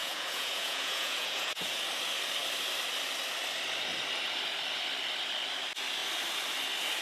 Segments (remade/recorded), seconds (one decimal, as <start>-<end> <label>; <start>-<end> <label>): 0.0-1.8 remade; 1.8-7.0 recorded